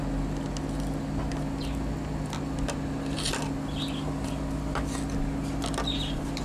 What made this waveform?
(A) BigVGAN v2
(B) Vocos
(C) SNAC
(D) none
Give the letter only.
D